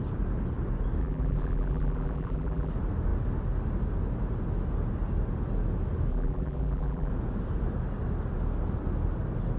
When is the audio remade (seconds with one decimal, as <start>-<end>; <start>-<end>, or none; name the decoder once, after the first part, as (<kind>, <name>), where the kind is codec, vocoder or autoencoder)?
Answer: 1.0-2.7 (vocoder, BigVGAN v2); 6.1-7.1